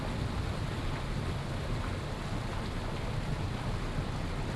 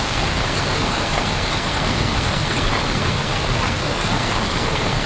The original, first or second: first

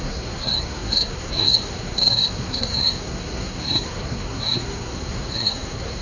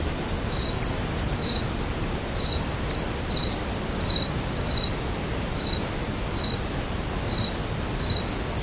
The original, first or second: second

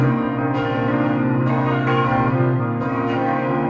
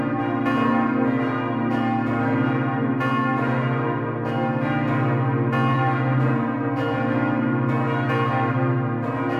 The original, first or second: second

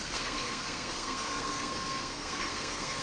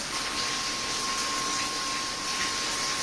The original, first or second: second